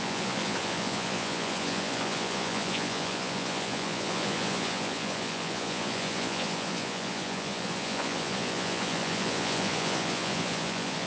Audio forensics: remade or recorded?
remade